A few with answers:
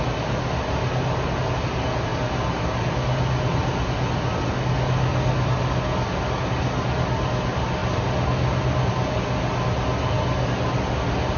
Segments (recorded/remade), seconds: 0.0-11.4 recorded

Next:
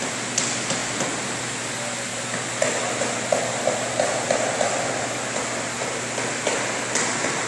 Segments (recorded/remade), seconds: 0.0-7.5 recorded

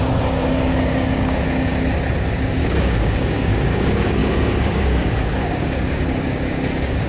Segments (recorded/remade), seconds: 0.0-1.7 remade; 1.7-2.3 recorded; 2.3-7.1 remade